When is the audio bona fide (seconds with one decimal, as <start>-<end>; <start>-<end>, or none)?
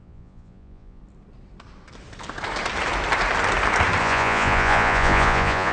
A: 1.0-4.0